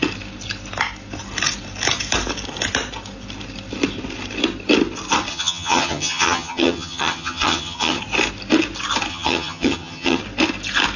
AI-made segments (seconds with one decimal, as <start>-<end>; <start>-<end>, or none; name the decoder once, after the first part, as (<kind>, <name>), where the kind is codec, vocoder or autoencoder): 5.3-8.0 (vocoder, HiFi-GAN); 9.1-10.2